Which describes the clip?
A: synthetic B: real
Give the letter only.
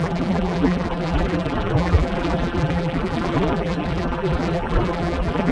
A